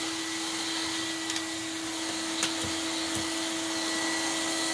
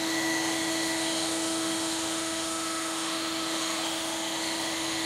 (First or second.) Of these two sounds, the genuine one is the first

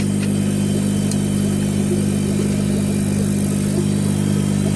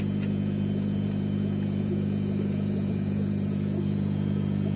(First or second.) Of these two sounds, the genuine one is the first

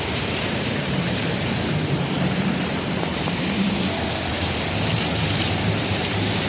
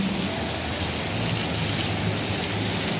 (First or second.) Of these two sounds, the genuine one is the second